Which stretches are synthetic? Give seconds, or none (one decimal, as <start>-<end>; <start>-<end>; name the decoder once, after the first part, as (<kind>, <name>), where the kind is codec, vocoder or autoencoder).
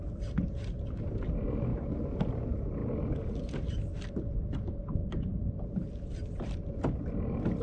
5.0-5.7 (vocoder, BigVGAN v2)